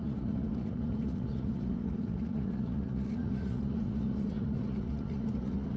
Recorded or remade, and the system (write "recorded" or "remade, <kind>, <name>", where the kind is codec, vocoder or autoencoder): remade, vocoder, Vocos